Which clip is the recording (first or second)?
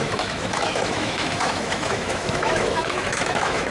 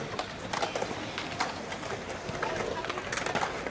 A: second